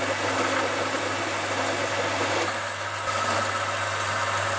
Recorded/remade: recorded